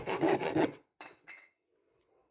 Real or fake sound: fake